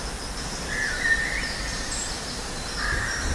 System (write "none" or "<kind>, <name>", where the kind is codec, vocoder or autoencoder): none